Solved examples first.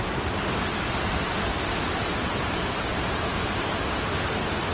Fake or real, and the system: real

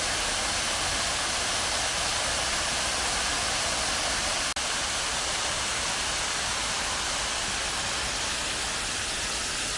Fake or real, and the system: real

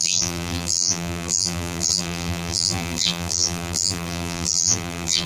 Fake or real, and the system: fake, vocoder, BigVGAN v2